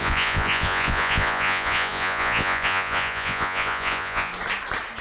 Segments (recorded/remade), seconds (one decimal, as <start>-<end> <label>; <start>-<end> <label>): 0.0-4.3 remade; 4.3-5.0 recorded